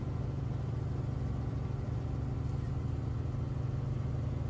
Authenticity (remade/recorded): recorded